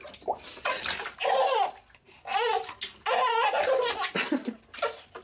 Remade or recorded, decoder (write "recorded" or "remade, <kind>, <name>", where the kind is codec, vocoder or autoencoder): recorded